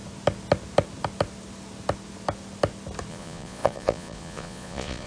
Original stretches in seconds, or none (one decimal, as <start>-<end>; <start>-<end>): 0.0-3.1